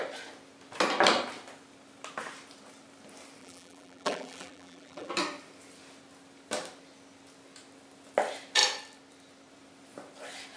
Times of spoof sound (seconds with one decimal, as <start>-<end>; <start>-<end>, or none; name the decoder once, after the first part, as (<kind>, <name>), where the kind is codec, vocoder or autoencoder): 3.4-5.1 (vocoder, BigVGAN v2)

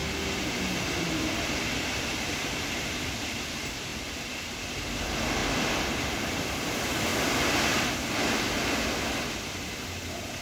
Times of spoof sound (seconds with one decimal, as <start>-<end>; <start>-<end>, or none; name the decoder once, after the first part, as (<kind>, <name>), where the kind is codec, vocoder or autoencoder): 0.5-3.9 (vocoder, BigVGAN v2); 4.4-10.4

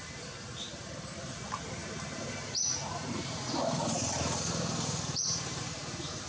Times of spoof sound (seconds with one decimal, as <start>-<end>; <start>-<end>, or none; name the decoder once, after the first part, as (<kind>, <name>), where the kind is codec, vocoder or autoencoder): 0.0-6.3 (vocoder, BigVGAN v2)

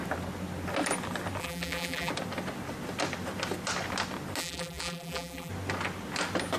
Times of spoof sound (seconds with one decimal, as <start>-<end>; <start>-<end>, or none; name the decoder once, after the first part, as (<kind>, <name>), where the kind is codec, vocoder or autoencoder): 1.4-2.1 (vocoder, BigVGAN v2); 4.4-5.5

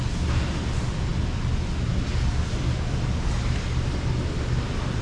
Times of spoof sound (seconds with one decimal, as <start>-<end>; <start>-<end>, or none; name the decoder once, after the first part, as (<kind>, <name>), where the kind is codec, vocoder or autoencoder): none

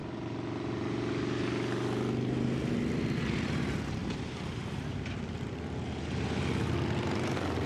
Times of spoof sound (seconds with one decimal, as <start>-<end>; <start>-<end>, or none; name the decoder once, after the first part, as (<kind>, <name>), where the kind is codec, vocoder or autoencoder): 4.0-5.1 (vocoder, BigVGAN v2)

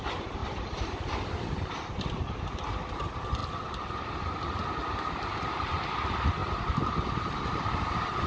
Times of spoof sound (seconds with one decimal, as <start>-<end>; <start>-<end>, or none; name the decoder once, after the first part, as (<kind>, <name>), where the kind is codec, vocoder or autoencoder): 0.4-1.5 (vocoder, BigVGAN v2); 6.4-7.7

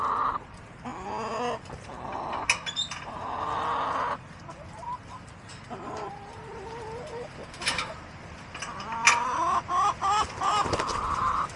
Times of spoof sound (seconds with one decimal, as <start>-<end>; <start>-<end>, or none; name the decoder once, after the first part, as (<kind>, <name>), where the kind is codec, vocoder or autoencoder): none